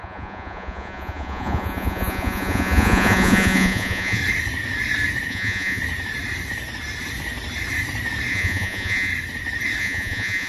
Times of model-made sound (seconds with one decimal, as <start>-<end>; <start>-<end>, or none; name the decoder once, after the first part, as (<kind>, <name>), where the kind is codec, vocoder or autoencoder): 0.0-4.2 (vocoder, Vocos); 5.3-5.8; 8.3-9.1; 9.8-10.5